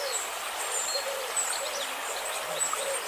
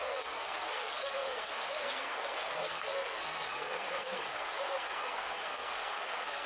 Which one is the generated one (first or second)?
second